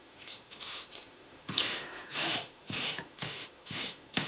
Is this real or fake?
fake